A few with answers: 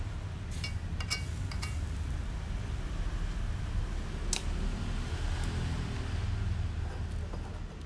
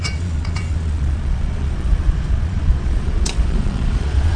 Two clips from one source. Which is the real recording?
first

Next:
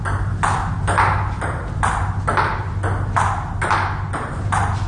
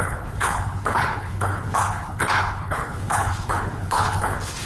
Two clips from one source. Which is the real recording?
first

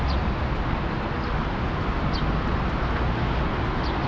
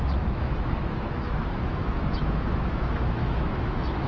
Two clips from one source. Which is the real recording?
first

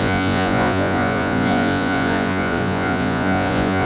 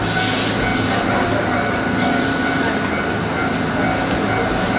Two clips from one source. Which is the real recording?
second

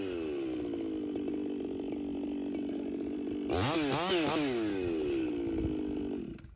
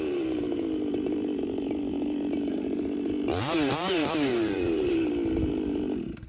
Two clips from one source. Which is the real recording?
first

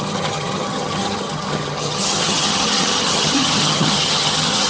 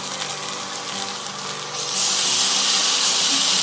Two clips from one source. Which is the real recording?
second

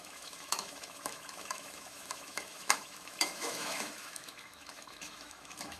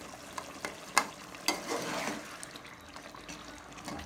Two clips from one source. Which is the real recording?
second